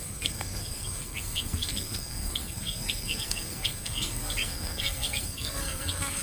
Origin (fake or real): fake